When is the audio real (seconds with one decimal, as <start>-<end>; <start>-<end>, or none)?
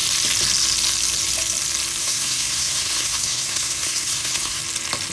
0.0-2.0; 4.6-5.1